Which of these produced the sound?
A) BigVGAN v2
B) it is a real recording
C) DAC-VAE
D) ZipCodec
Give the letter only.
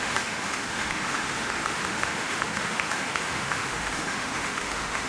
C